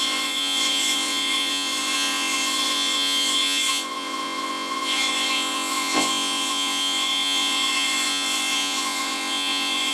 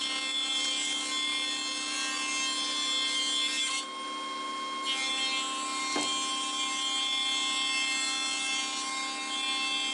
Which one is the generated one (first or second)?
first